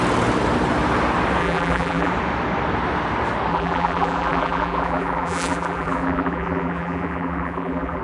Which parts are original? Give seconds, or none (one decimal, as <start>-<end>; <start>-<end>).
0.0-1.4; 2.1-3.5